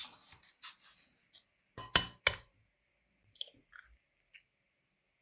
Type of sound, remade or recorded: recorded